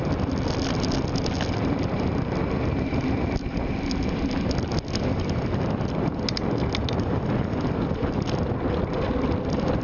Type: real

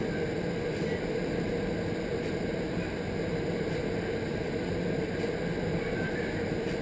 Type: real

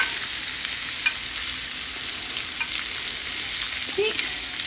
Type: real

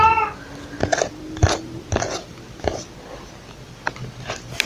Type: real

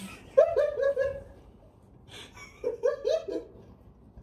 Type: real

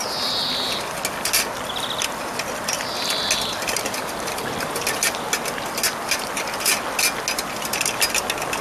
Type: real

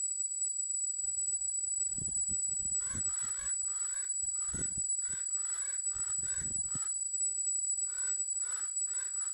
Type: fake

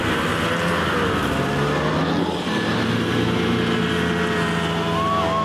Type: real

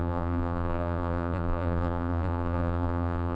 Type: fake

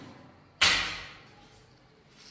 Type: real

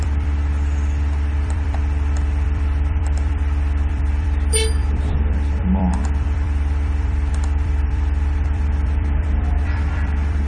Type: fake